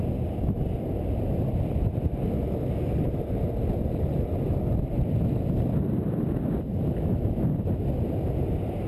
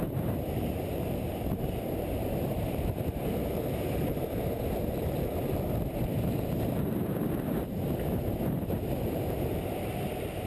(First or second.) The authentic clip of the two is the first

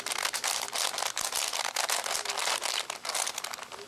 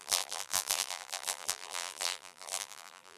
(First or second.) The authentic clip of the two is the first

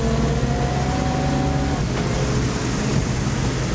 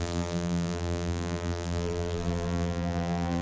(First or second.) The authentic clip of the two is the first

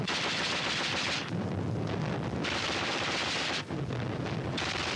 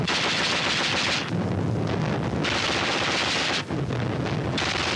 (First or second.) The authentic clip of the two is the second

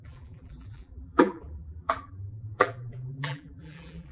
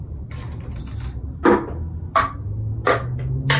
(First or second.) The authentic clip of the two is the second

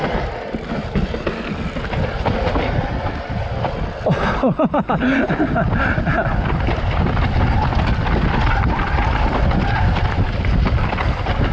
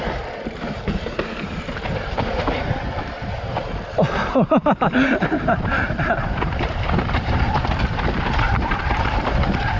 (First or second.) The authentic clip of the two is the first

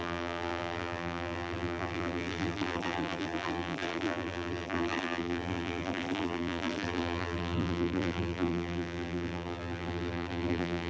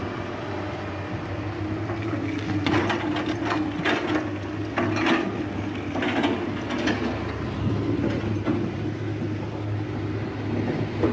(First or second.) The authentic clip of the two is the second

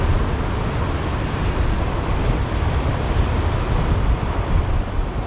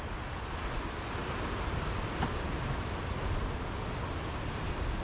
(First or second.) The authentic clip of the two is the second